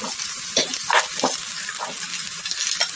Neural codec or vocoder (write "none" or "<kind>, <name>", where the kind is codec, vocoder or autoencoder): none